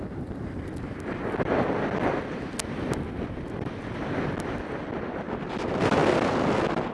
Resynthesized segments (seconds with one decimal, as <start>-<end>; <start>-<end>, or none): none